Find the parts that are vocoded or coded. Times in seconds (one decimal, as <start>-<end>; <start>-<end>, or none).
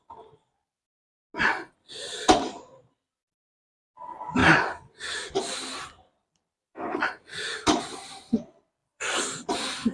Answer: 4.4-8.1; 8.8-9.5